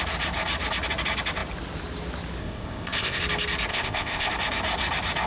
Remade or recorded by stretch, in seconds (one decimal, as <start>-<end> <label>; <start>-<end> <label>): 0.0-2.4 recorded; 2.4-3.2 remade; 3.2-3.7 recorded; 3.7-4.3 remade; 4.3-5.3 recorded